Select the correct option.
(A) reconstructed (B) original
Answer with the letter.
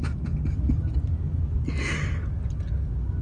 B